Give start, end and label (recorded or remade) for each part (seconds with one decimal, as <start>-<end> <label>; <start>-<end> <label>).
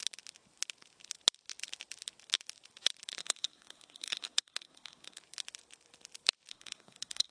0.0-3.2 recorded; 3.2-5.2 remade; 5.2-6.5 recorded; 6.5-7.3 remade